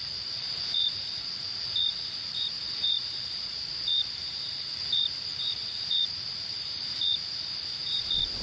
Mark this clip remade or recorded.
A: remade